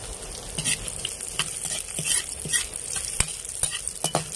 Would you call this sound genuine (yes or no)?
yes